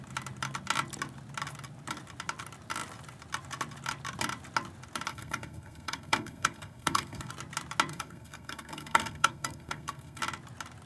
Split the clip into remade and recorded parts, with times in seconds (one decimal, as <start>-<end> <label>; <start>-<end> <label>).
0.0-5.1 recorded; 5.1-7.3 remade; 7.3-7.9 recorded; 7.9-10.2 remade; 10.2-10.9 recorded